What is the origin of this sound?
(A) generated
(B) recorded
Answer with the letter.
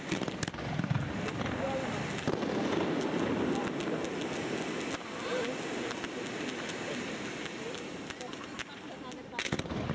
B